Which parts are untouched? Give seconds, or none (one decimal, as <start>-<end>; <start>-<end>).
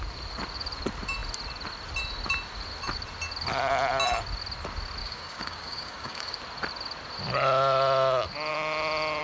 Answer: 0.0-5.0; 6.4-9.2